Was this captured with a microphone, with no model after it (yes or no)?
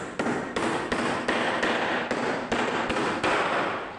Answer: yes